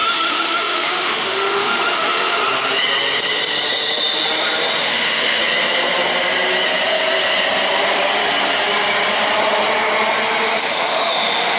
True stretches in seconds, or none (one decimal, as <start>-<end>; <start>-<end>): 2.4-4.8; 5.4-10.6